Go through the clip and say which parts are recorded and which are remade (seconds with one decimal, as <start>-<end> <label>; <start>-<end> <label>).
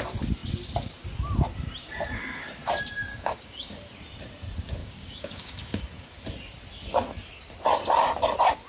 0.0-3.1 recorded; 3.1-3.7 remade; 3.7-4.8 recorded; 4.8-5.8 remade; 5.8-8.7 recorded